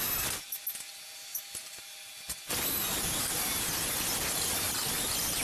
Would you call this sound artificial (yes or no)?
no